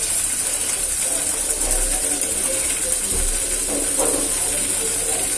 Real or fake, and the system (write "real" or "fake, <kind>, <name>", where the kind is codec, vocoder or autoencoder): real